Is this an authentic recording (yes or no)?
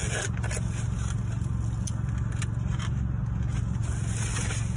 yes